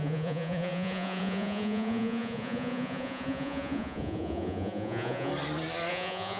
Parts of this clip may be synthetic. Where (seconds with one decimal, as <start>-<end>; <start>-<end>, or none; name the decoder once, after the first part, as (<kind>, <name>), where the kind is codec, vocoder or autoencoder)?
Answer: 0.0-5.3 (vocoder, Vocos); 5.9-6.4